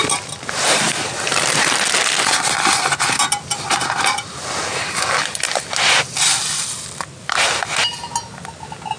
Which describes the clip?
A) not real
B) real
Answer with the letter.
B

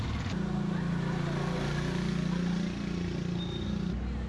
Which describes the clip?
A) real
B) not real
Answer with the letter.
A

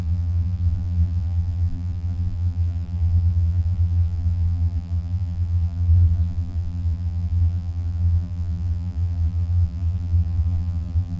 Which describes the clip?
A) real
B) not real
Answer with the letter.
B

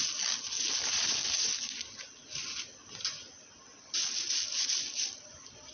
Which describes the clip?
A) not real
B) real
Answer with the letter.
B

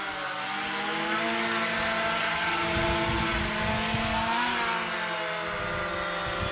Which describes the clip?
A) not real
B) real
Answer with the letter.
B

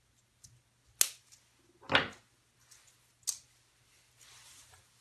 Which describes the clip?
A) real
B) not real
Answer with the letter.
A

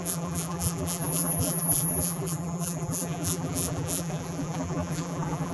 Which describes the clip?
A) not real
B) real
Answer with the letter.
A